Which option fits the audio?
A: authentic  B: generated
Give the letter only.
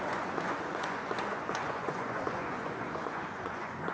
B